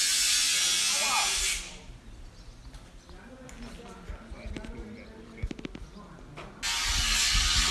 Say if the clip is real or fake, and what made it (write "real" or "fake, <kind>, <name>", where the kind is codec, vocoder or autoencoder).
real